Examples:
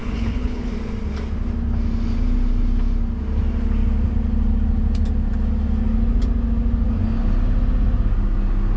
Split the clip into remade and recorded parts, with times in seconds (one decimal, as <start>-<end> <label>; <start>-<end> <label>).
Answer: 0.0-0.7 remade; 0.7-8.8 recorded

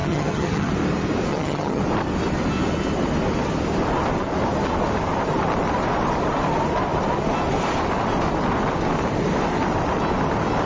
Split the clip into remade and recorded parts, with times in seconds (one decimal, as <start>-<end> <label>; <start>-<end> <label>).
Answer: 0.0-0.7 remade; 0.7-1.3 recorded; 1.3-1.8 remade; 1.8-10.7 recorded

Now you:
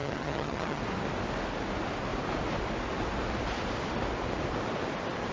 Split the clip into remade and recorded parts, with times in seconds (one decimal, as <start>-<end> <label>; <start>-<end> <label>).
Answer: 0.0-0.8 remade; 0.8-5.3 recorded

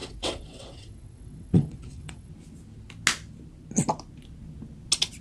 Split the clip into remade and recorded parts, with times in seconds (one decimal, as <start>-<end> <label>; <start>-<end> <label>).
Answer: 0.0-2.3 remade; 2.3-5.2 recorded